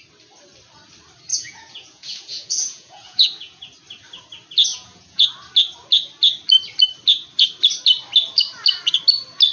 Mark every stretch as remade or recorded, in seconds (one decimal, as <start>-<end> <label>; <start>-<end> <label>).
0.0-1.3 recorded; 1.3-3.6 remade; 3.6-4.7 recorded; 4.7-5.3 remade; 5.3-9.5 recorded